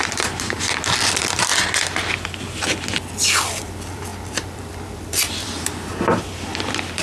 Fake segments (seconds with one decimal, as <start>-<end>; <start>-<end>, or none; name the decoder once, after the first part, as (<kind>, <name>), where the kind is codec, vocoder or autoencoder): 0.0-1.5 (vocoder, BigVGAN v2); 3.6-7.0